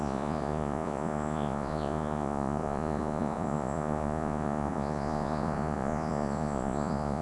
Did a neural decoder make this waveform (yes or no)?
yes